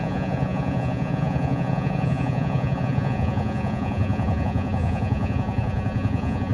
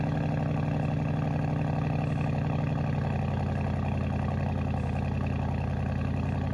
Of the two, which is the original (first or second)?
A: second